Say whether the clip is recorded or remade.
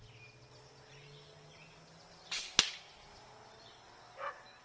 recorded